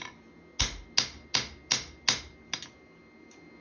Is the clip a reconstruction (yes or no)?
no